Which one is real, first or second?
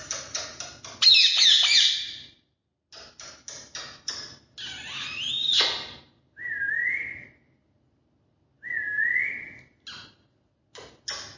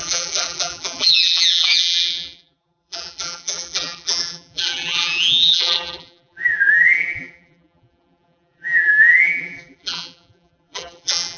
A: first